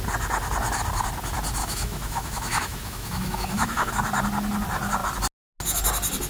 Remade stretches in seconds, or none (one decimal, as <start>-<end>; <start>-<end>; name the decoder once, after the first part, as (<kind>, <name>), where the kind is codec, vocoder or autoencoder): 1.6-3.9 (autoencoder, DAC-VAE)